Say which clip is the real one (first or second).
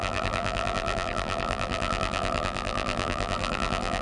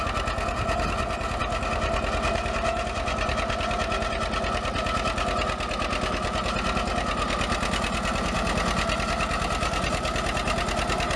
second